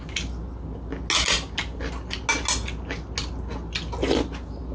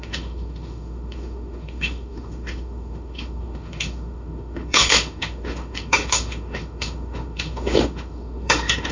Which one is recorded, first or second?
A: first